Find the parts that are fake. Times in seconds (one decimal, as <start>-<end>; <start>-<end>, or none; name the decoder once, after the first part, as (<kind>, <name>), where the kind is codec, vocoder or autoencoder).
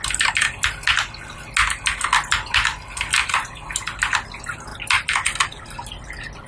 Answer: none